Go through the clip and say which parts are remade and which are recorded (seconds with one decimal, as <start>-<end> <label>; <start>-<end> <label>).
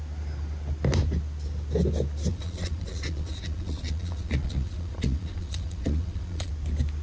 0.0-2.3 recorded; 2.3-6.5 remade; 6.5-7.0 recorded